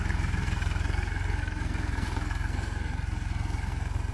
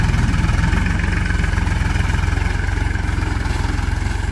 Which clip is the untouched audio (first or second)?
second